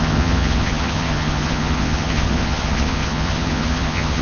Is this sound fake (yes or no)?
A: yes